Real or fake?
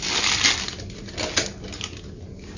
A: real